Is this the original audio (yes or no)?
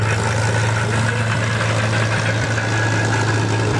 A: yes